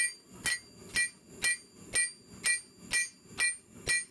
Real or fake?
real